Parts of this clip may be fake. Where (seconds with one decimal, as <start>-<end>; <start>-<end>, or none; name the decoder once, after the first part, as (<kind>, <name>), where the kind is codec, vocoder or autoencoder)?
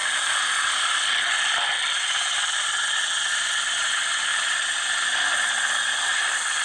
none